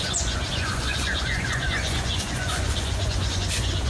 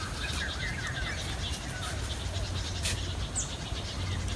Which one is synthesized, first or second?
first